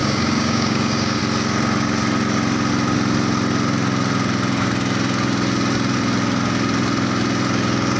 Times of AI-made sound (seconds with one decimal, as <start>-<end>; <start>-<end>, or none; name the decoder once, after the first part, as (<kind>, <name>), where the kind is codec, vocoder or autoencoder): 0.0-1.2 (codec, DAC)